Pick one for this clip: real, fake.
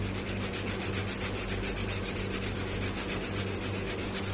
real